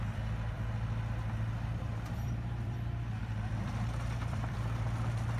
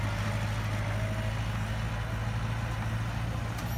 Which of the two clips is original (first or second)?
second